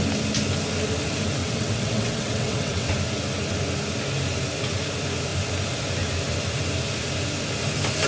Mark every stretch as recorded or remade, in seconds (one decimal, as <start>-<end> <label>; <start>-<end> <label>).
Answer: 0.0-1.4 recorded; 1.4-2.9 remade; 2.9-8.1 recorded